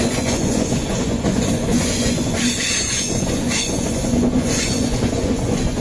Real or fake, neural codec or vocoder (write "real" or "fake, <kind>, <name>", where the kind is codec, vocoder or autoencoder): fake, vocoder, Vocos